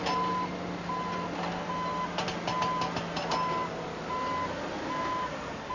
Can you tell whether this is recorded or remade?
recorded